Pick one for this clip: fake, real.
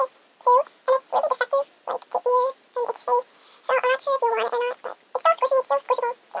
real